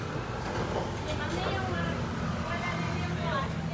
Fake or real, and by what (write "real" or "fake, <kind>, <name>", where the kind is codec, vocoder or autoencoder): real